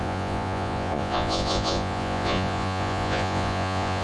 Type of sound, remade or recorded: remade